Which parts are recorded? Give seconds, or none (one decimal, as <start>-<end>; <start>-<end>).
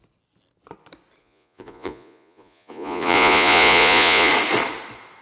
0.0-1.2; 4.3-5.2